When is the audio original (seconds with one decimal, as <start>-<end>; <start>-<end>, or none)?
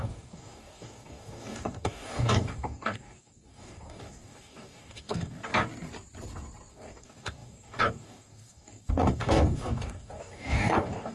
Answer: 5.5-6.7